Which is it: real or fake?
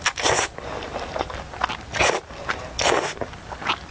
real